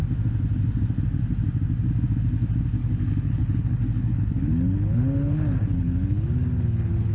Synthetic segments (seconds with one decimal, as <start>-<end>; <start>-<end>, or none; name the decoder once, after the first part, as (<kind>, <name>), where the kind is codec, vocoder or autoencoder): 2.8-7.1 (codec, HILCodec)